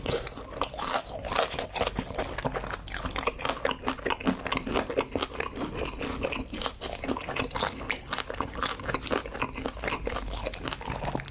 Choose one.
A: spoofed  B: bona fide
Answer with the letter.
B